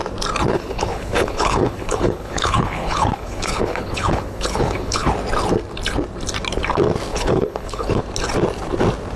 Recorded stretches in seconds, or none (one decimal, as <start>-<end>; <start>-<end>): 0.0-0.5; 5.1-7.1; 8.0-9.2